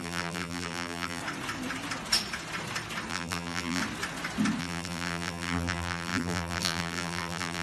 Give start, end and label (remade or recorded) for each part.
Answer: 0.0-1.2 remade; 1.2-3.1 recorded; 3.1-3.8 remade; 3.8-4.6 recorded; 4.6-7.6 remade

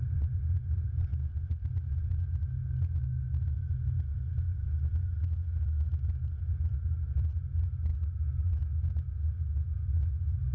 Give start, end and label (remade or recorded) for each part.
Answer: 0.0-10.5 recorded

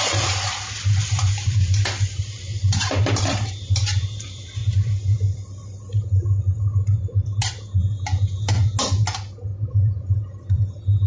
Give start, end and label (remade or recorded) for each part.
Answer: 0.0-4.6 remade; 4.6-6.6 recorded; 6.6-8.1 remade; 8.1-9.7 recorded; 9.7-11.1 remade

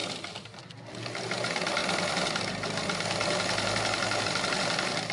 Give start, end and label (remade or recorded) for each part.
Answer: 0.0-1.8 remade; 1.8-4.2 recorded; 4.2-5.1 remade

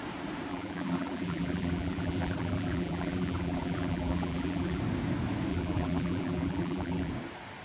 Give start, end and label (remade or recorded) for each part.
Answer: 0.0-0.5 recorded; 0.5-4.8 remade; 4.8-5.5 recorded; 5.5-7.1 remade; 7.1-7.6 recorded

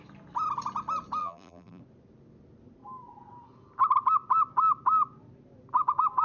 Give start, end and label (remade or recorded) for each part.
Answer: 0.0-1.2 recorded; 1.2-1.8 remade; 1.8-6.2 recorded

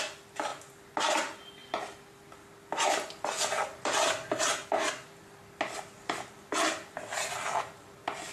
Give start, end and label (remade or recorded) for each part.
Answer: 0.0-8.3 recorded

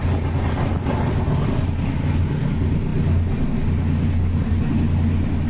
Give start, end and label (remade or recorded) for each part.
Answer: 0.0-5.5 recorded